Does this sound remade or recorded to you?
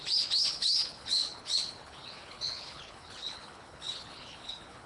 remade